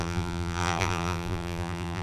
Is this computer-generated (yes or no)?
yes